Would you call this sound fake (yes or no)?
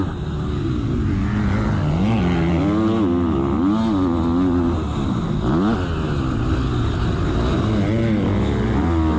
no